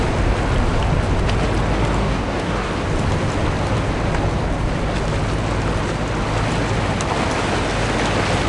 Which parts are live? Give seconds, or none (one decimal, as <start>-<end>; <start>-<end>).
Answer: 0.0-2.0; 2.7-8.5